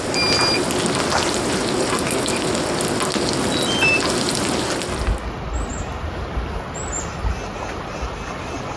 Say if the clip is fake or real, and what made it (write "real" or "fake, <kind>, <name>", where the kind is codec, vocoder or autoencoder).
real